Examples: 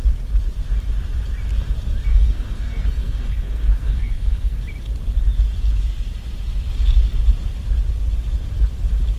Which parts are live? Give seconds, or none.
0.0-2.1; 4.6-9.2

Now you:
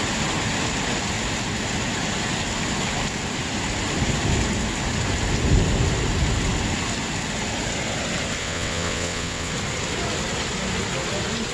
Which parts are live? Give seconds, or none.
0.0-8.4; 9.5-11.5

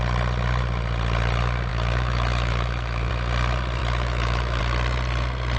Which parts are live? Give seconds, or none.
0.0-1.7; 3.1-3.8; 4.6-5.6

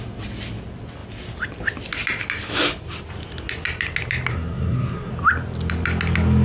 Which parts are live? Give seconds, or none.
0.0-4.3; 5.1-6.4

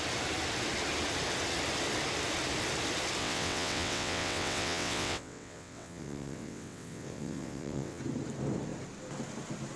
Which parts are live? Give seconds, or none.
0.0-3.2; 8.0-9.8

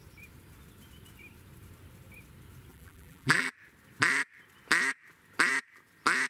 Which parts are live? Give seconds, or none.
0.0-2.7; 3.5-6.3